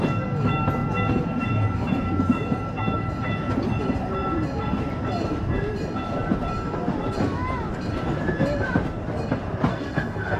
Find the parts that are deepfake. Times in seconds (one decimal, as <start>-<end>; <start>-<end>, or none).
9.7-10.4